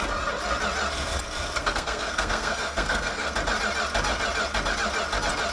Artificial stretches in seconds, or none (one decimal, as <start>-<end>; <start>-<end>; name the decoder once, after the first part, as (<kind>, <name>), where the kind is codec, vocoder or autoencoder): 1.6-3.3 (codec, SNAC)